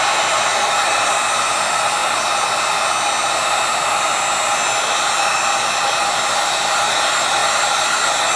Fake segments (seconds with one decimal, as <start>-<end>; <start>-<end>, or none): 0.5-2.0; 6.0-8.4